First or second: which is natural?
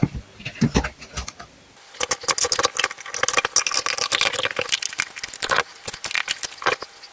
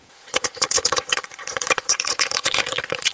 first